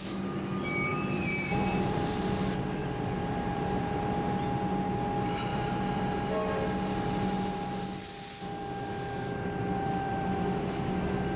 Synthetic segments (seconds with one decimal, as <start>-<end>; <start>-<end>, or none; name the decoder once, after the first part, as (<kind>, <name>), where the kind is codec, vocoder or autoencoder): 0.9-2.2 (vocoder, BigVGAN v2); 2.8-4.0; 5.5-6.0